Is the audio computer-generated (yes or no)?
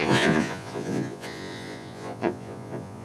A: yes